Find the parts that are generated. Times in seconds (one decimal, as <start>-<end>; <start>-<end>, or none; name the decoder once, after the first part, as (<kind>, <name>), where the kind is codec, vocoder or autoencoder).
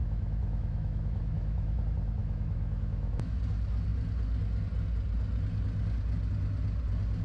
0.0-1.8 (autoencoder, DAC-VAE); 2.2-3.4